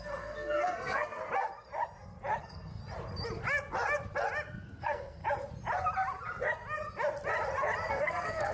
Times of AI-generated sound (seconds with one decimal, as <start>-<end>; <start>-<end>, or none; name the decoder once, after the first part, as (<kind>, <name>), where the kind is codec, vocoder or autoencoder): 0.0-1.2 (codec, SNAC); 2.4-2.8; 4.8-5.2; 7.9-8.5